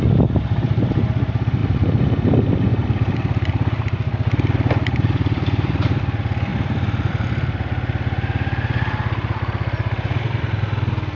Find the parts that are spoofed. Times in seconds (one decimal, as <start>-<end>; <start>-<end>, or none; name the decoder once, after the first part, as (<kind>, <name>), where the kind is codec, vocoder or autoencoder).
1.6-6.0 (vocoder, BigVGAN v2)